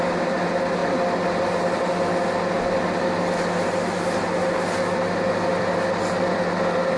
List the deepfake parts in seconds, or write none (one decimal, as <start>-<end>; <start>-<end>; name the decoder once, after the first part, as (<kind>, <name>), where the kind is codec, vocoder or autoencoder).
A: none